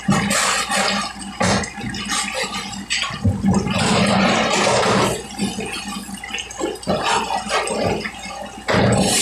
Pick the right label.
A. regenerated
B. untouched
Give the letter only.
B